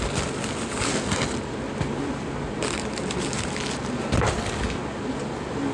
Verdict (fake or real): real